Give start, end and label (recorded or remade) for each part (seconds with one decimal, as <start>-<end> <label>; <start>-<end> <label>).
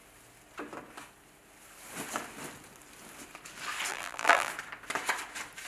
0.0-3.9 recorded; 3.9-4.5 remade; 4.5-5.7 recorded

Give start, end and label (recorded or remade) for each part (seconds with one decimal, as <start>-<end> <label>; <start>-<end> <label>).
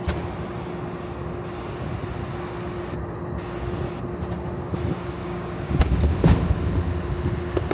0.0-5.2 recorded; 5.2-6.0 remade; 6.0-7.7 recorded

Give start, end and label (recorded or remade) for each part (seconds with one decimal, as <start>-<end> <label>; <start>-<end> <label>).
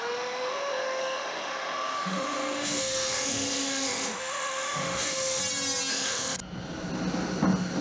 0.0-5.4 remade; 5.4-5.9 recorded; 5.9-6.4 remade; 6.4-7.8 recorded